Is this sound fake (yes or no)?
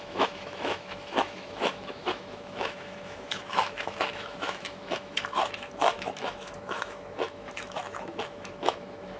yes